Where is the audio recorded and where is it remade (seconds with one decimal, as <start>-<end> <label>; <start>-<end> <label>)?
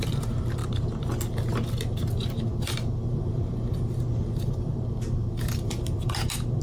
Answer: 0.0-0.6 remade; 0.6-2.4 recorded; 2.4-6.6 remade